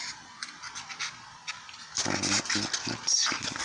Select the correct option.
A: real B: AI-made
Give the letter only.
A